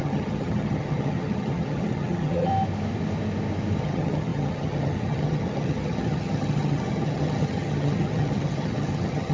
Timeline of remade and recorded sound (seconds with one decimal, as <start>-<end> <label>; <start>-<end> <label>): 0.0-2.5 remade; 2.5-3.8 recorded; 3.8-9.3 remade